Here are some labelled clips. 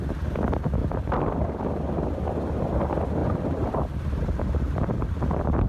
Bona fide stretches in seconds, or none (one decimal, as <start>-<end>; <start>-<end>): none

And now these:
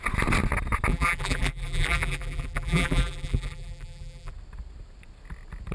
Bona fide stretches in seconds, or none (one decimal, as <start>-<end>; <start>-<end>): 0.0-0.9; 4.3-5.7

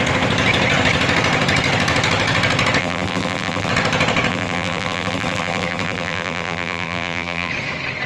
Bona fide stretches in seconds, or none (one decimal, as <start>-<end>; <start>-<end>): 0.0-2.8; 3.7-4.3; 7.5-8.1